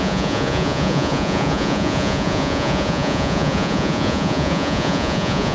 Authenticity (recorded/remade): remade